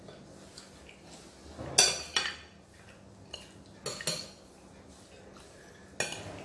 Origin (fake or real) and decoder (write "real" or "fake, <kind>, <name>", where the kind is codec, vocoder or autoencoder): real